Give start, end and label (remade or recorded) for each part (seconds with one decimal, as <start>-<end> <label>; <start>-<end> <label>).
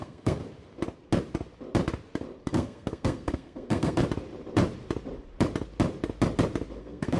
0.0-0.4 remade; 0.4-2.4 recorded; 2.4-4.0 remade; 4.0-6.8 recorded; 6.8-7.2 remade